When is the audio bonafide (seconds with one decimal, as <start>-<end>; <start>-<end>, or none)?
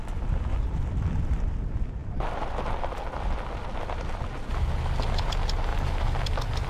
0.0-5.7